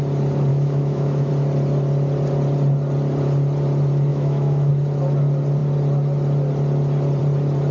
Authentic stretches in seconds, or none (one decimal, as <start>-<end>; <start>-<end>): 0.0-0.5; 1.3-4.1; 4.7-7.7